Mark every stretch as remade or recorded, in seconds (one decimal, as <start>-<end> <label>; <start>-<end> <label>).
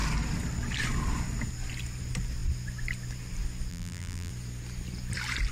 0.0-3.7 recorded; 3.7-4.3 remade; 4.3-5.5 recorded